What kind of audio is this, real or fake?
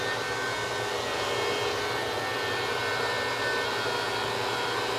real